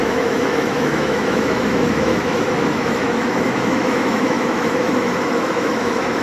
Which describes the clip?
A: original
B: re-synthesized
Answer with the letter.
B